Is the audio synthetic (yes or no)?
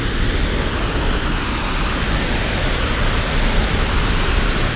no